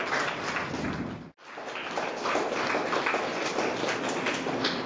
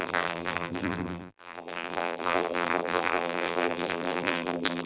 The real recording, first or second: first